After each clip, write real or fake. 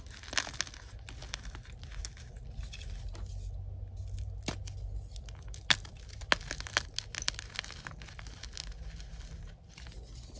real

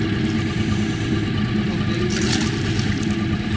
real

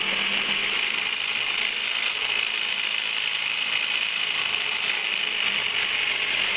real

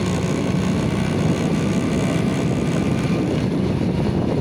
real